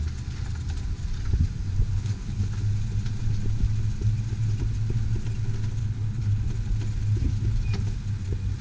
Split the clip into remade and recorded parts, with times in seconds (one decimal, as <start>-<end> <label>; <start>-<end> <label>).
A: 0.0-1.9 recorded; 1.9-2.5 remade; 2.5-5.8 recorded; 5.8-6.5 remade; 6.5-8.6 recorded